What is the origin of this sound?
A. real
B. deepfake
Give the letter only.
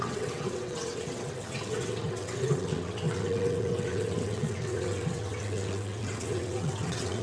B